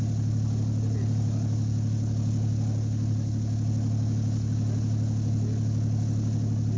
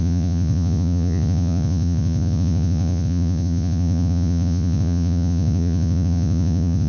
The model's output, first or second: second